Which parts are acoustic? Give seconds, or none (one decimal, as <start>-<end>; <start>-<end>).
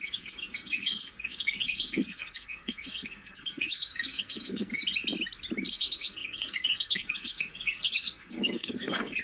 4.8-5.7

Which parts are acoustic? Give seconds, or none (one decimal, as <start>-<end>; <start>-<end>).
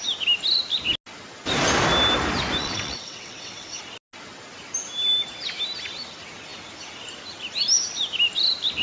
0.0-2.6; 3.8-8.8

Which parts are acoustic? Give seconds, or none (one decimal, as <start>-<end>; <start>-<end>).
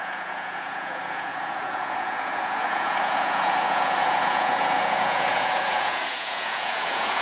none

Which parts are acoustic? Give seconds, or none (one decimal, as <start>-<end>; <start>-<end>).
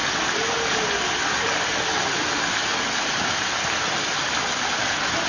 0.0-5.3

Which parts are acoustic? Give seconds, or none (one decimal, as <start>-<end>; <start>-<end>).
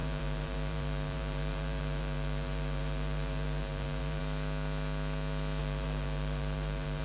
4.2-5.6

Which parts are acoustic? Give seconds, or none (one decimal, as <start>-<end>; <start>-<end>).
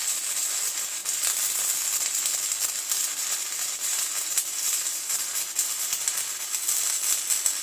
0.0-7.6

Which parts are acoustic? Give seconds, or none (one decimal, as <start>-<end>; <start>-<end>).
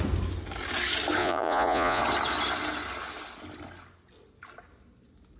0.0-1.2; 2.0-5.4